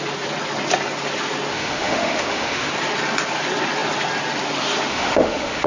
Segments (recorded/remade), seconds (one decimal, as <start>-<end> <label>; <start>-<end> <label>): 0.0-1.5 recorded; 1.5-2.7 remade; 2.7-4.9 recorded; 4.9-5.7 remade